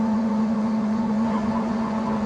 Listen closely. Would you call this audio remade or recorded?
remade